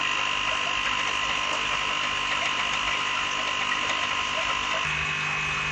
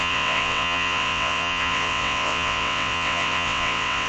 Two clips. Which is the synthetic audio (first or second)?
second